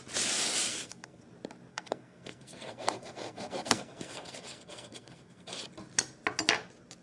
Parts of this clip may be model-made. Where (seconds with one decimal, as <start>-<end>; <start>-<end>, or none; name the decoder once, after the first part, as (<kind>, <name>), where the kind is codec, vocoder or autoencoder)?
0.7-1.2 (codec, SNAC); 1.7-5.6